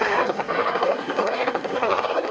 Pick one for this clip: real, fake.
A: fake